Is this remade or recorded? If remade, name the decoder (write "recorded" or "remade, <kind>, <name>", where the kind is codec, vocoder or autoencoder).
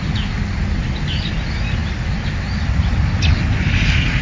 recorded